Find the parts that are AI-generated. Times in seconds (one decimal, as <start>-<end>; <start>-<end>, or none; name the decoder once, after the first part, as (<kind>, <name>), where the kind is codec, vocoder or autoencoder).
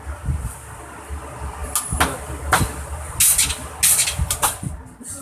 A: none